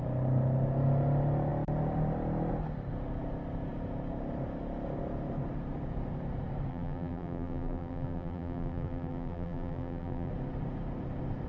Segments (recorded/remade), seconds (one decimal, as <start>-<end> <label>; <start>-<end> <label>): 0.0-6.7 recorded; 6.7-10.3 remade; 10.3-11.5 recorded